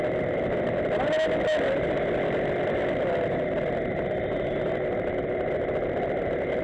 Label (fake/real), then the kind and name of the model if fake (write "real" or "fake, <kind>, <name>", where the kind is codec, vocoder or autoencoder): real